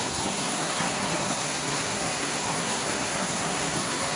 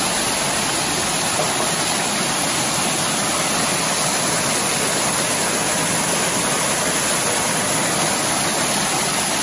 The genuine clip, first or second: second